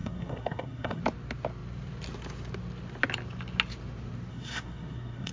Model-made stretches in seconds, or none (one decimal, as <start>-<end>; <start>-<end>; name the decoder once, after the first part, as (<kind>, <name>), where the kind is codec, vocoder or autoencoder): 0.0-1.0 (codec, SNAC); 4.3-5.3